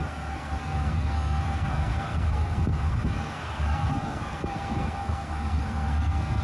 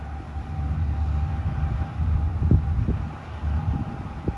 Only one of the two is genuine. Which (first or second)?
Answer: second